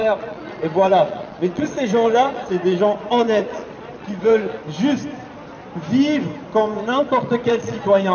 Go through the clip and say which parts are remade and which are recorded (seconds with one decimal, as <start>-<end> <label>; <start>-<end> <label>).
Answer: 0.0-4.6 remade; 4.6-6.8 recorded; 6.8-8.1 remade

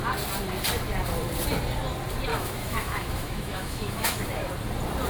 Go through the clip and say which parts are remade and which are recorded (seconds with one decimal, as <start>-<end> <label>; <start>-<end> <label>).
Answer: 0.0-2.3 recorded; 2.3-4.5 remade; 4.5-5.1 recorded

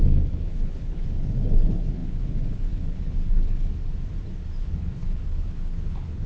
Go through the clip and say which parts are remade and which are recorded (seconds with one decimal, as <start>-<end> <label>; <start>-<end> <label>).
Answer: 0.0-3.7 remade; 3.7-4.6 recorded; 4.6-6.3 remade